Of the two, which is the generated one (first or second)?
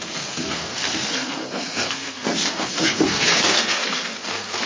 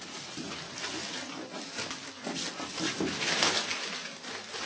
first